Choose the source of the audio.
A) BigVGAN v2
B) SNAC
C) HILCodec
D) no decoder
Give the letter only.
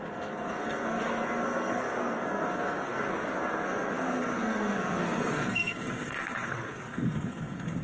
B